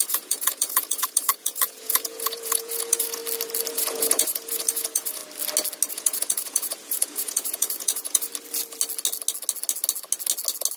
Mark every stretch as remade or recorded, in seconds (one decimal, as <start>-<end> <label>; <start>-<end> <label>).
0.0-3.2 remade; 3.2-3.7 recorded; 3.7-5.2 remade; 5.2-5.9 recorded; 5.9-8.3 remade; 8.3-10.8 recorded